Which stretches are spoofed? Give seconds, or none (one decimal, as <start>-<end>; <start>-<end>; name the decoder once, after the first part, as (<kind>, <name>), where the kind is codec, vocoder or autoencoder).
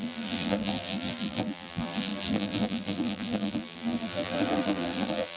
0.0-5.4 (vocoder, BigVGAN v2)